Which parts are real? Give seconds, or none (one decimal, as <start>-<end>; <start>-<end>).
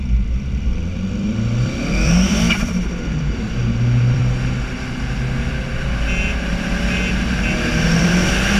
4.2-8.0